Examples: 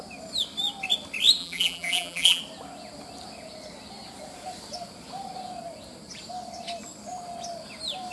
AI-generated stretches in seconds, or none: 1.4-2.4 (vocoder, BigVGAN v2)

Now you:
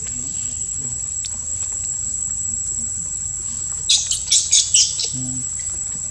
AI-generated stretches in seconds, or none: none

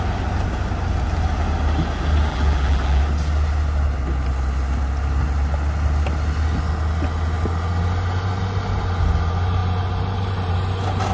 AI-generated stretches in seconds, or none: 2.3-3.0 (vocoder, BigVGAN v2)

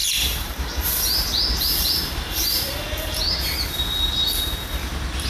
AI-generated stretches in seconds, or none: 0.0-3.2 (vocoder, BigVGAN v2)